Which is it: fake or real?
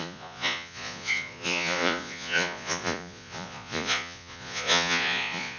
fake